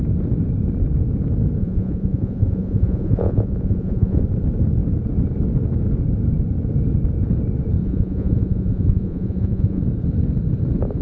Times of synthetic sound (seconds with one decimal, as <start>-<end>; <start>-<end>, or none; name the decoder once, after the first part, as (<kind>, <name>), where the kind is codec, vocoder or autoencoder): 1.6-4.2 (vocoder, Vocos); 7.8-9.8